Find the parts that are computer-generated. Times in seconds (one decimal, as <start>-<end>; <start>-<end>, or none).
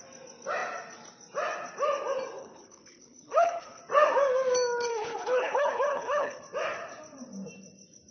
2.4-3.8; 4.9-6.4